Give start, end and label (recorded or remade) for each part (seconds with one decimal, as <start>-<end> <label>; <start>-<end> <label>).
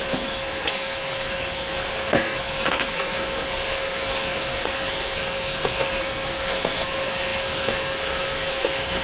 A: 0.0-9.0 remade